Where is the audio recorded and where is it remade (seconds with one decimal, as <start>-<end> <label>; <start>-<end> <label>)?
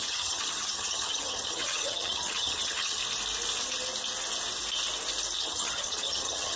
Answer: 0.0-3.0 remade; 3.0-5.4 recorded; 5.4-6.6 remade